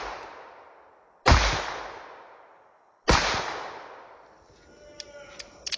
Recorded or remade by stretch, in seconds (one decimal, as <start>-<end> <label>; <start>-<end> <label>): 0.0-5.8 recorded